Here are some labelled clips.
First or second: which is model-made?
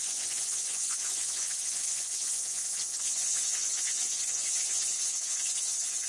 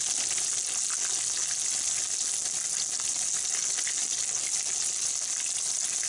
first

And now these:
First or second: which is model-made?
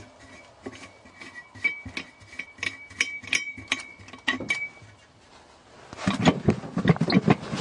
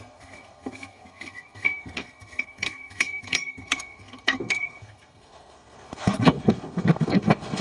second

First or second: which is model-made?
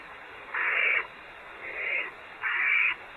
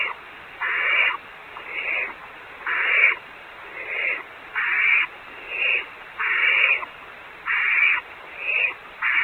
first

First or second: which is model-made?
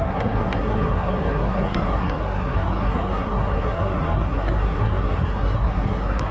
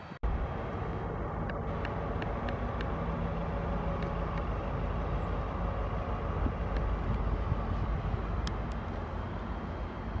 first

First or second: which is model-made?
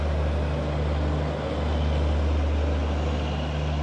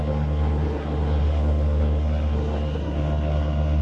second